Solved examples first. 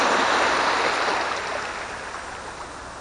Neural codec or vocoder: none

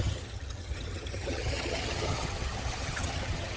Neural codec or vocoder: vocoder, HiFi-GAN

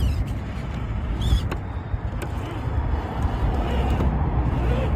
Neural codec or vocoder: none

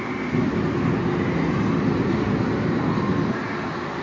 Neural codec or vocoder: none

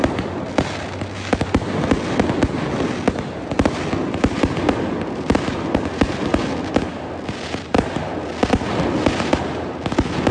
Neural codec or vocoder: none